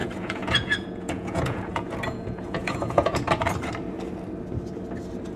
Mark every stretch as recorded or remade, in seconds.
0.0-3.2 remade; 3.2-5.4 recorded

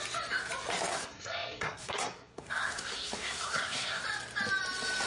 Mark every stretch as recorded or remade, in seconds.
0.0-0.9 recorded; 0.9-4.0 remade; 4.0-5.1 recorded